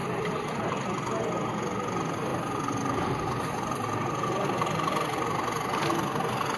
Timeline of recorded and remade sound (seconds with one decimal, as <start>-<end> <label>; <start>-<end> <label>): 0.0-6.6 recorded